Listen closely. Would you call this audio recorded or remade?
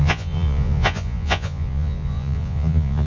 remade